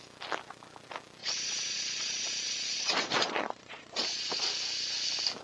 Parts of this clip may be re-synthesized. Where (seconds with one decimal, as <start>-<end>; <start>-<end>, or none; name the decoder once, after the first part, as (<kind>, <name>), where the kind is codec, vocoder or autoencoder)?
1.2-4.4 (vocoder, Vocos)

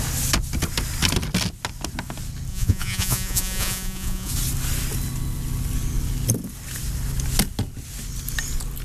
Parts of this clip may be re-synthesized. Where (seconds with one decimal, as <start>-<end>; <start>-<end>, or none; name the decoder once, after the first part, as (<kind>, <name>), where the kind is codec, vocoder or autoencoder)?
2.5-4.3 (vocoder, Vocos)

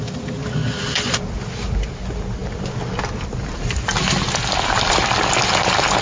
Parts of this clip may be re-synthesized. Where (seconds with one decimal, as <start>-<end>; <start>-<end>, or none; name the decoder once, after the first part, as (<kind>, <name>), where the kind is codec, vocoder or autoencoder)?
none

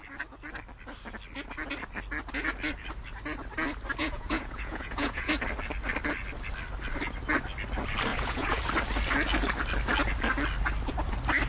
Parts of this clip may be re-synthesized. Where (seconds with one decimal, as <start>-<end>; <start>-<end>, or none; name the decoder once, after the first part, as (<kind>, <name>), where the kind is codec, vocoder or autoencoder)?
4.0-5.3 (vocoder, Vocos); 8.1-8.6

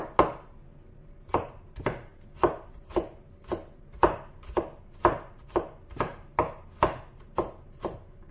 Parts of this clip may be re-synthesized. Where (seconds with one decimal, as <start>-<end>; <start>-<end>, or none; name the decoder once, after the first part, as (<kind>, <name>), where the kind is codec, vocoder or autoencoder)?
none

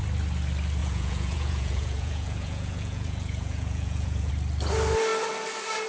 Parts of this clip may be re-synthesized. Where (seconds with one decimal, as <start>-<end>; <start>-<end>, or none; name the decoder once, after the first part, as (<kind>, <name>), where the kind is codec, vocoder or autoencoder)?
0.8-4.3 (vocoder, Vocos)